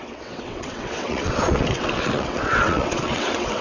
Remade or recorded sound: remade